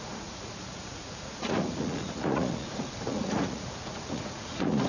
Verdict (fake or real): fake